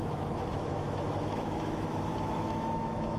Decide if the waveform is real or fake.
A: fake